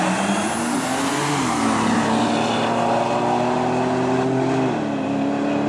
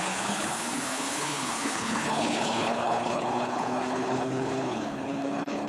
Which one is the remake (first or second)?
second